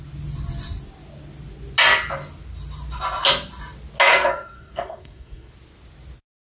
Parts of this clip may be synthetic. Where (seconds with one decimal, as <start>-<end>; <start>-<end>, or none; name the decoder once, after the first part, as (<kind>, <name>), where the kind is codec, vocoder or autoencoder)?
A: 4.1-5.5 (codec, SNAC)